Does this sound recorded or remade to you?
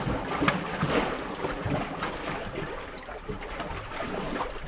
recorded